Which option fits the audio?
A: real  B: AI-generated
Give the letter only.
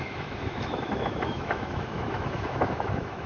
B